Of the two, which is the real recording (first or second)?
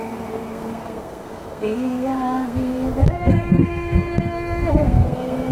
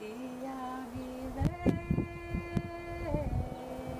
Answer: second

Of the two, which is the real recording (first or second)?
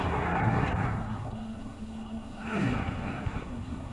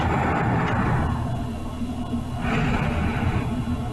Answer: second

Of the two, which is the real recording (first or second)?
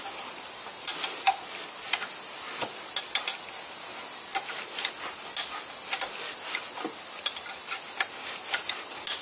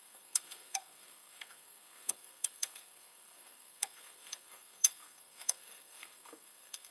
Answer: first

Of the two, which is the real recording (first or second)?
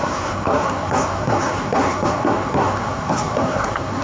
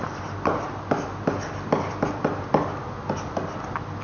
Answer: second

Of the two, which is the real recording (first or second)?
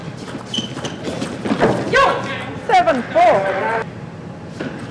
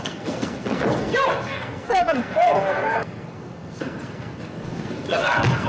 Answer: first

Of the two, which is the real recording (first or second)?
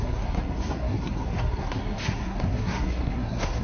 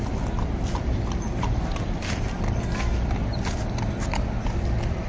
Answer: second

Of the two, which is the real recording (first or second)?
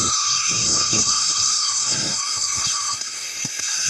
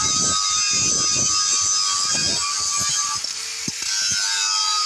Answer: second